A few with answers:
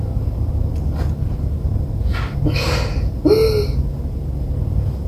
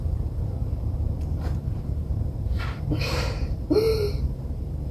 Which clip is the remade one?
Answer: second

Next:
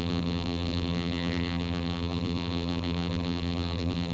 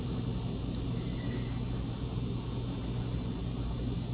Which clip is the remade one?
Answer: first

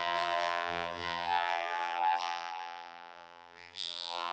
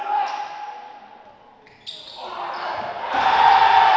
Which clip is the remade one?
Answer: first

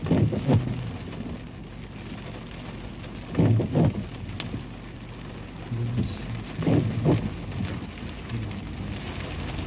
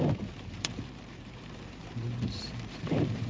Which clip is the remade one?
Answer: second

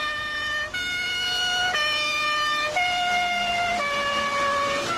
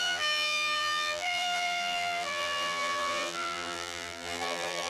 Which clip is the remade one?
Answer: second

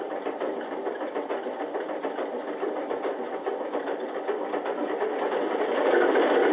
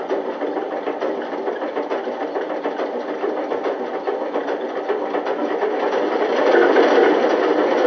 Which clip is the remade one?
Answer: first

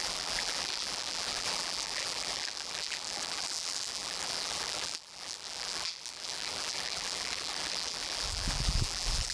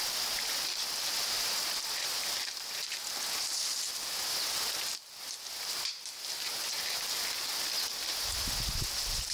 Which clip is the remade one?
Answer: first